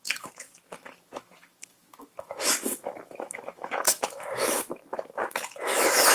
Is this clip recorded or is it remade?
remade